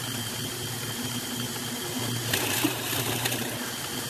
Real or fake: real